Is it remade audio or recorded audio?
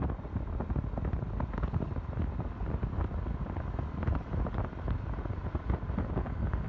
recorded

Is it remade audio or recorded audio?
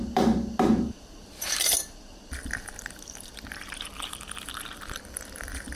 remade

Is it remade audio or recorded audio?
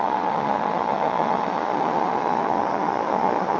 remade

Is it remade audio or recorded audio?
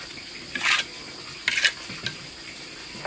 recorded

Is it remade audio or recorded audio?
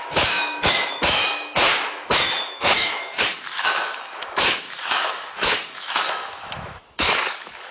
remade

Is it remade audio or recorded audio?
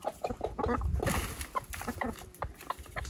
recorded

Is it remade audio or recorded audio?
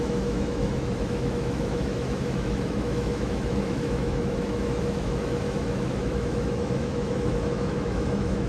remade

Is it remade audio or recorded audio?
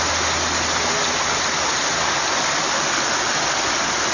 recorded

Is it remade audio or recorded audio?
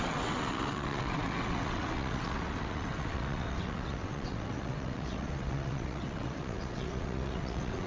remade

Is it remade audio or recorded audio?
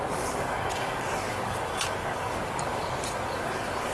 remade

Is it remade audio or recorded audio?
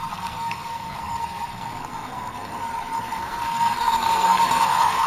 remade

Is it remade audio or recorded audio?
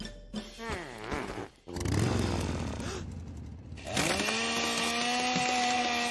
recorded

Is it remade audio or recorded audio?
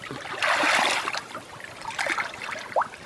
recorded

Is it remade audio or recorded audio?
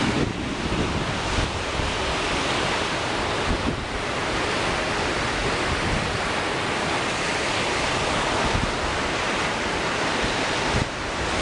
remade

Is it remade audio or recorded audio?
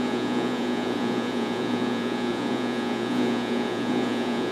remade